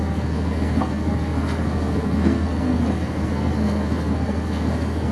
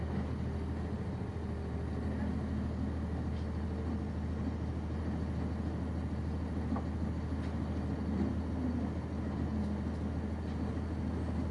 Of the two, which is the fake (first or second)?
first